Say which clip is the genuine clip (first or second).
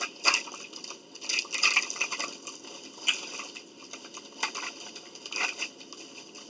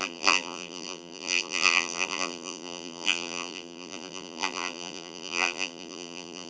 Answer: first